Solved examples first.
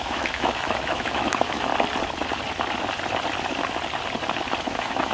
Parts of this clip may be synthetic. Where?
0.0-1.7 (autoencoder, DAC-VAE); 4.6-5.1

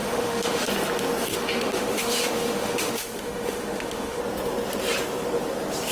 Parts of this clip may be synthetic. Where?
0.0-0.7 (autoencoder, DAC-VAE); 1.3-4.2

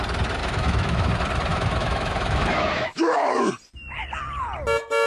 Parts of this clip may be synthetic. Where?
0.4-1.1 (autoencoder, DAC-VAE); 1.5-3.5